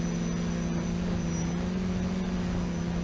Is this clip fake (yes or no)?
no